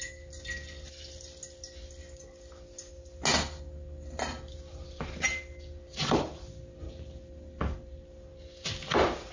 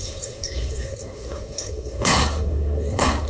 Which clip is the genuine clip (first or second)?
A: first